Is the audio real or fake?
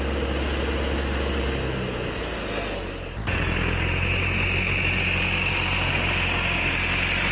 real